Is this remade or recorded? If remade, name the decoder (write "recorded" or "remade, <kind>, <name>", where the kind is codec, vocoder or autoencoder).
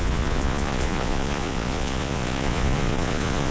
remade, vocoder, Vocos